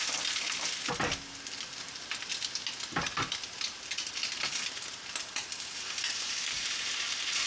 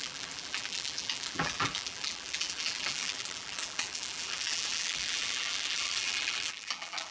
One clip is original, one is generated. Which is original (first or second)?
first